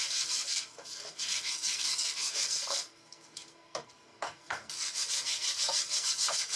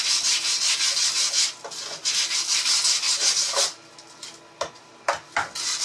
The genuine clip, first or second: second